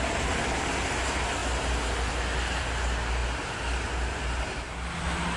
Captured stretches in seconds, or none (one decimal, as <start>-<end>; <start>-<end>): 0.0-5.4